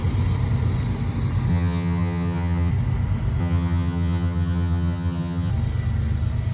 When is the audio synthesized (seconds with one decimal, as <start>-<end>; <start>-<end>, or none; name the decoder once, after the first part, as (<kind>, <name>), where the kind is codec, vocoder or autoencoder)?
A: 1.5-2.7 (vocoder, HiFi-GAN); 3.4-5.5